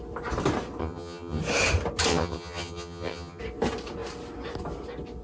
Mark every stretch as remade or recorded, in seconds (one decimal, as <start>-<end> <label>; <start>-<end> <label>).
0.0-0.8 recorded; 0.8-1.4 remade; 1.4-2.1 recorded; 2.1-3.4 remade; 3.4-5.2 recorded